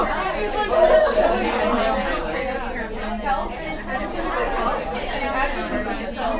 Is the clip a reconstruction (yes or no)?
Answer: no